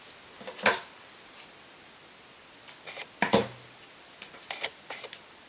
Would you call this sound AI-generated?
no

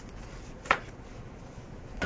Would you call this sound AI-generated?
yes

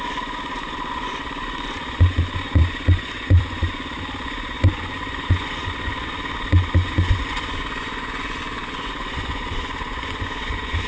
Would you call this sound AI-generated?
yes